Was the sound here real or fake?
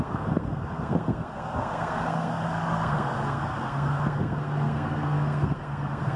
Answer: fake